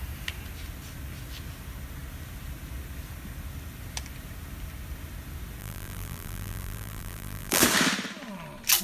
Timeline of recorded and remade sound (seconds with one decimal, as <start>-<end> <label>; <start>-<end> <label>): 0.0-5.6 recorded; 5.6-7.6 remade; 7.6-8.8 recorded